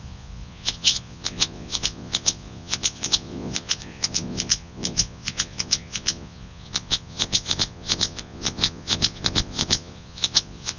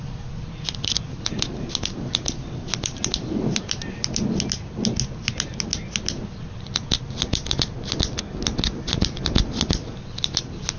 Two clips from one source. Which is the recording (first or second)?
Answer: second